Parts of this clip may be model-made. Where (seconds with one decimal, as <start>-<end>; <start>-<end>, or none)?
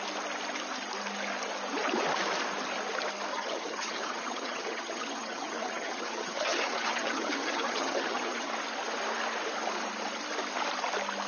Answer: 3.3-8.5